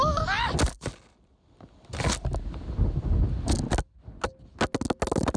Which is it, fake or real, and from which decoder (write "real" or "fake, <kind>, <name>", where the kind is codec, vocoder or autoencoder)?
real